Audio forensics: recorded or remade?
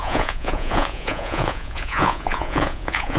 remade